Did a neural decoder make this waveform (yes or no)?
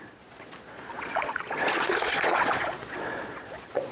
yes